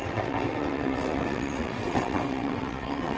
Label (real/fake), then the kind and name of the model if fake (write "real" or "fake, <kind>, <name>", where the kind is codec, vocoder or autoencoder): fake, vocoder, WaveNeXt